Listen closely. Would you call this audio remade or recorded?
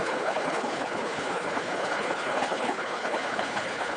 remade